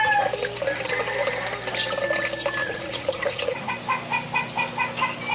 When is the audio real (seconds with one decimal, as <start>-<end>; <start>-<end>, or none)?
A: 0.0-2.6; 3.7-5.3